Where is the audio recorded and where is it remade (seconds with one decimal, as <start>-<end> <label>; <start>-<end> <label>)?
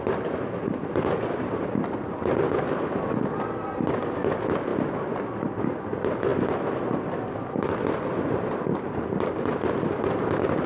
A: 0.0-10.7 recorded